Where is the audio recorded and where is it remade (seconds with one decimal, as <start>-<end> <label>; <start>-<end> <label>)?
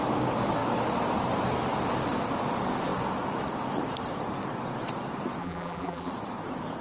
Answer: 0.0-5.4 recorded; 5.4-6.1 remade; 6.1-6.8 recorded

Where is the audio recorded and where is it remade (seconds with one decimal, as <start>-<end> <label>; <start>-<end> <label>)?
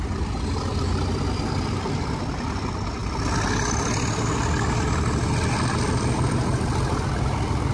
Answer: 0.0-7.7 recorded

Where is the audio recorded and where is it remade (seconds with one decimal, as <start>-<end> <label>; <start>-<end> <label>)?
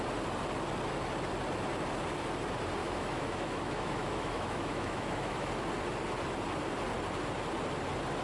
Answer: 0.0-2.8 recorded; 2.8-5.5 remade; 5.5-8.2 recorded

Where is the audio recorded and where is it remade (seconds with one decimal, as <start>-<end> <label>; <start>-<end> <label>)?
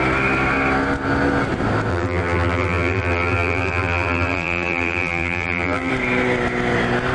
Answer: 0.0-1.9 recorded; 1.9-5.9 remade; 5.9-7.1 recorded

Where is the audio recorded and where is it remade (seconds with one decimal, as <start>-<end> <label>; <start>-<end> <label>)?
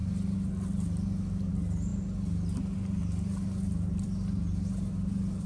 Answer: 0.0-1.5 remade; 1.5-1.9 recorded; 1.9-5.5 remade